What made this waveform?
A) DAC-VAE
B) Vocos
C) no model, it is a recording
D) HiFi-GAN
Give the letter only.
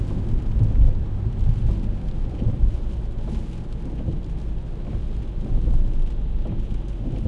C